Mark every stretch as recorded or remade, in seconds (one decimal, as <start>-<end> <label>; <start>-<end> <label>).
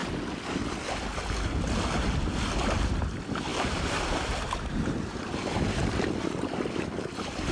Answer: 0.0-3.5 recorded; 3.5-6.1 remade; 6.1-7.5 recorded